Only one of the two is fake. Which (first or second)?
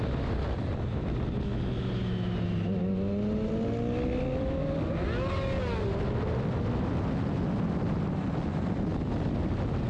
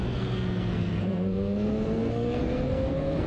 second